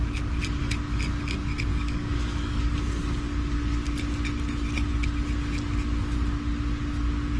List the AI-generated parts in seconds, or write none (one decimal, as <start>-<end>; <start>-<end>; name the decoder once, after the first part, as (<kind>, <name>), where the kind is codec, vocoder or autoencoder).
1.7-2.8 (codec, DAC)